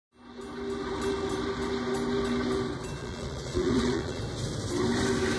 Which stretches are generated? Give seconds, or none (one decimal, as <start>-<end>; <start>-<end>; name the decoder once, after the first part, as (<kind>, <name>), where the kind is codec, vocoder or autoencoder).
3.0-4.2 (vocoder, Vocos)